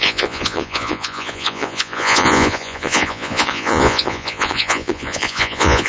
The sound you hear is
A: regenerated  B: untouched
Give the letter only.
A